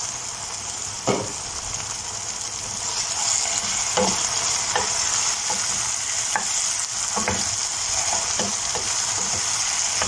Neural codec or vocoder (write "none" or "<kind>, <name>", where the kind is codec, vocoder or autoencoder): none